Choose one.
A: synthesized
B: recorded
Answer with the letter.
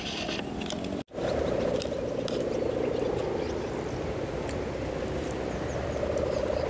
B